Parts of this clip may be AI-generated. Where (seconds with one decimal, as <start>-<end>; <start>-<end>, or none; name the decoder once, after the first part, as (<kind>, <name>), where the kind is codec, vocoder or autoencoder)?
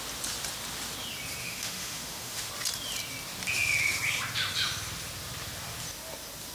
1.4-2.5 (autoencoder, DAC-VAE)